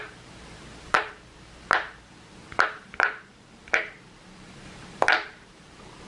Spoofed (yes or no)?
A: yes